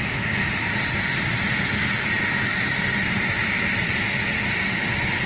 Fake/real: real